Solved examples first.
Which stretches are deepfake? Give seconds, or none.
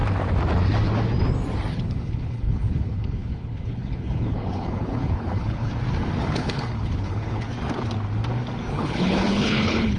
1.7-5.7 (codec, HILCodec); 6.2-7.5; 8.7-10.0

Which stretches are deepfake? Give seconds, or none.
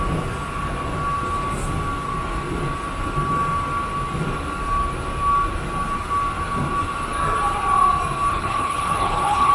8.3-9.5 (codec, HILCodec)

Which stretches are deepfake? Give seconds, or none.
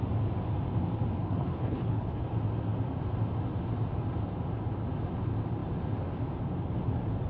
1.2-2.2 (codec, HILCodec)